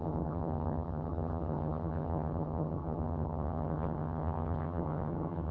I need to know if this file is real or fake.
fake